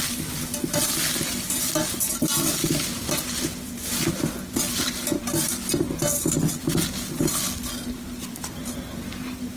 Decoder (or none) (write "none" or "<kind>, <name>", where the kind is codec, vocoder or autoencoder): none